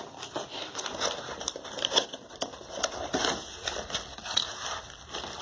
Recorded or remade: recorded